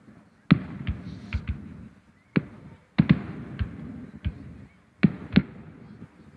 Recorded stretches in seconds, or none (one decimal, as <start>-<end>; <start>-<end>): 0.0-6.4